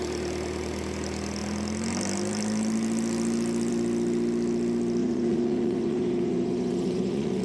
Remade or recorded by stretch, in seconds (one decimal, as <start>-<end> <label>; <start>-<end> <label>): 0.0-5.0 recorded; 5.0-7.4 remade